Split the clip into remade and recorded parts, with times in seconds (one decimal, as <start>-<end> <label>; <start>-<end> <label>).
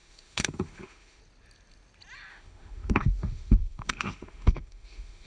0.0-1.2 remade; 1.2-2.3 recorded; 2.3-5.3 remade